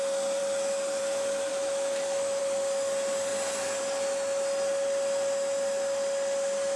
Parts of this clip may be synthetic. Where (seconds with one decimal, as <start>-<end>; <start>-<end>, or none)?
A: 1.5-2.4